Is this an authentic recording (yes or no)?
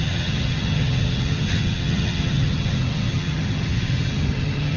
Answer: no